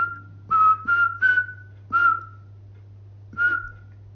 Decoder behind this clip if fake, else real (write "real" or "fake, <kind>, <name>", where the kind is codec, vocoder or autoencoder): real